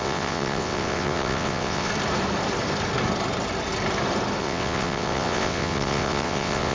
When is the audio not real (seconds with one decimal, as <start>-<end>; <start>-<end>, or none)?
0.0-1.9; 4.4-6.7